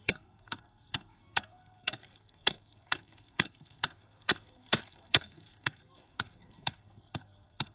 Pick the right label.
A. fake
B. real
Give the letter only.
A